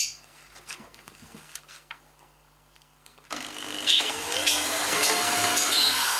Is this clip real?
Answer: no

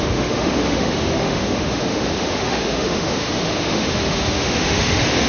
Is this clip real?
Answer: no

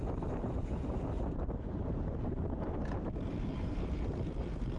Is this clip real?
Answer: no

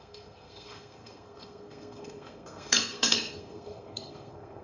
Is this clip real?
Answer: no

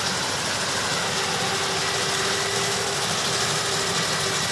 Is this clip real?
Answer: yes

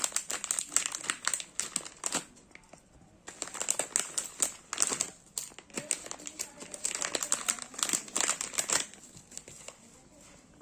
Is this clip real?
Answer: yes